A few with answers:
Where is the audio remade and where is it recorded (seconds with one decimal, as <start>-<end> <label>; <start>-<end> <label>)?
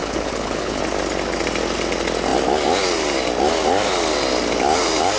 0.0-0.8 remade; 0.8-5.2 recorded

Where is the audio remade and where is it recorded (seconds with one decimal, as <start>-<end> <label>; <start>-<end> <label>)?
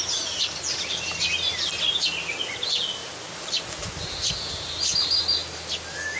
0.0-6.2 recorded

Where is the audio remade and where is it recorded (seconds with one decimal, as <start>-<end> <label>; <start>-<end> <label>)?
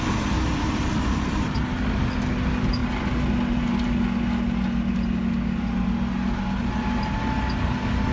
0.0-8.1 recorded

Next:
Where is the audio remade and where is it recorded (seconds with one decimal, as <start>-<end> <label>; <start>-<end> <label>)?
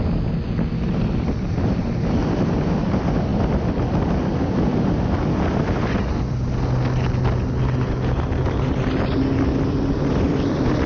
0.0-10.9 recorded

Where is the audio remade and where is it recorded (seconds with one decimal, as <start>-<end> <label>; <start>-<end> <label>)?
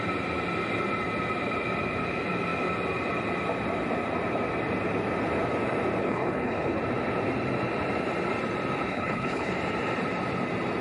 0.0-6.0 recorded; 6.0-6.8 remade; 6.8-8.9 recorded; 8.9-9.5 remade; 9.5-10.8 recorded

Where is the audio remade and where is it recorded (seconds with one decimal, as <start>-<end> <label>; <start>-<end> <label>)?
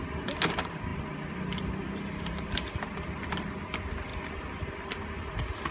0.0-5.7 recorded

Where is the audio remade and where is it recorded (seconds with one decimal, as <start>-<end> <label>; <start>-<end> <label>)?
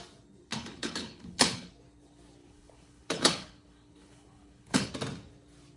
0.0-0.5 recorded; 0.5-1.7 remade; 1.7-2.4 recorded; 2.4-4.9 remade; 4.9-5.8 recorded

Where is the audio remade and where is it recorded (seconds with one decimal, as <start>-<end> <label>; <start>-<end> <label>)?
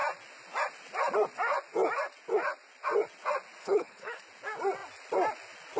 0.0-3.6 recorded; 3.6-4.2 remade; 4.2-5.8 recorded